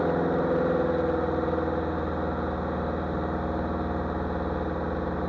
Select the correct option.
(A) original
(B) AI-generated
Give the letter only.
A